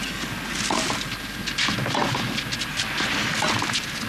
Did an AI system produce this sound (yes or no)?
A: no